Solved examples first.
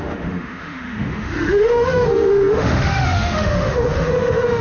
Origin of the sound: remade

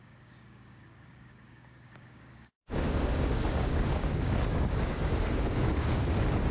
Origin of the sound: remade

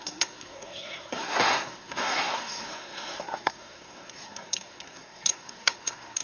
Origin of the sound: remade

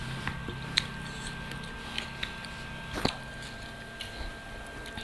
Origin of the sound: recorded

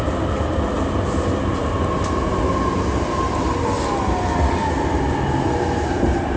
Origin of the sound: recorded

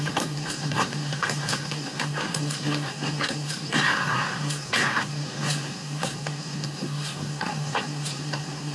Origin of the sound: remade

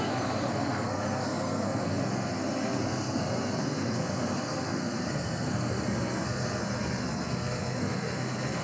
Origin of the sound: remade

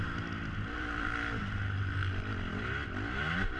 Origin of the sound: recorded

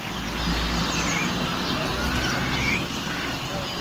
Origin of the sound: recorded